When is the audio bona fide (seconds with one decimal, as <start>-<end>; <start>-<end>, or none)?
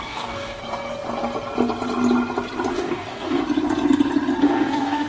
0.6-2.7; 3.4-4.4